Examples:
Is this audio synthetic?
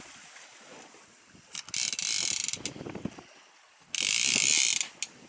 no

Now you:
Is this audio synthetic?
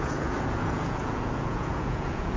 yes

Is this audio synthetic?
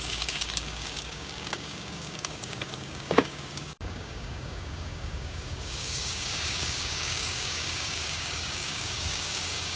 yes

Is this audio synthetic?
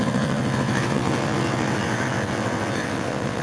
yes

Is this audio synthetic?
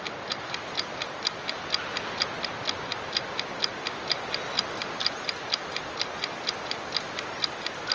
no